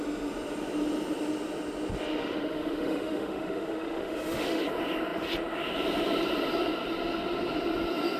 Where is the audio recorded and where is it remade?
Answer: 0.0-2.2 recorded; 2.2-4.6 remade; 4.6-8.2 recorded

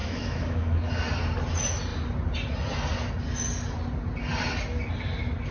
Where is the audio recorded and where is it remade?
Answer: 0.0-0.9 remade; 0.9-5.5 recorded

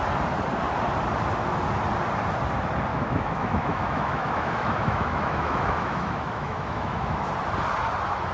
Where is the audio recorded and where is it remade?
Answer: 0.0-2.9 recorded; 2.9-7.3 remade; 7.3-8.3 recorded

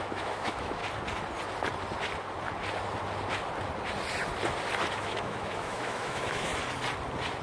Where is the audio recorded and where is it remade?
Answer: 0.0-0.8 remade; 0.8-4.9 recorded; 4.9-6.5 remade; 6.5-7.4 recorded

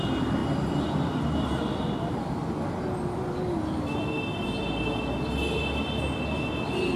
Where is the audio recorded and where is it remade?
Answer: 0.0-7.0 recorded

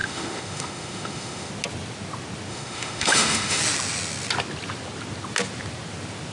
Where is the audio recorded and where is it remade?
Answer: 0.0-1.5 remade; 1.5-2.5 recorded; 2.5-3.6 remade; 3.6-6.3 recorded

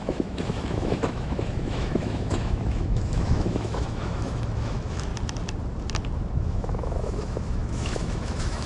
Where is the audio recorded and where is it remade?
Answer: 0.0-5.1 remade; 5.1-6.3 recorded; 6.3-8.7 remade